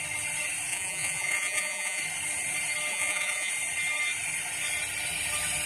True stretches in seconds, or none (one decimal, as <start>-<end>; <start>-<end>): 0.0-0.7; 2.0-2.9; 3.5-5.7

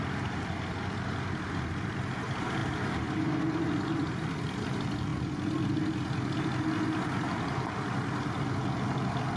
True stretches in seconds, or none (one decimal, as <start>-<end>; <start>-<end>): 0.0-9.4

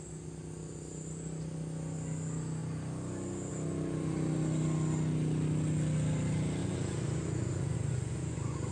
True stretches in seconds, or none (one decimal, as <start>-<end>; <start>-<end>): 0.0-6.6

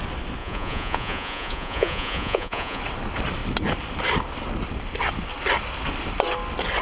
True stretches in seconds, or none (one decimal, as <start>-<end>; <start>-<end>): 0.0-0.4; 2.8-6.8

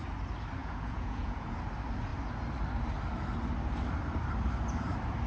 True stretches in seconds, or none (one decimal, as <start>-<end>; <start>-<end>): 0.0-0.6; 1.6-5.3